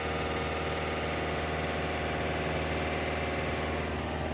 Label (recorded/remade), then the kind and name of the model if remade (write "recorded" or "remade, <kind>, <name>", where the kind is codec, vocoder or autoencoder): recorded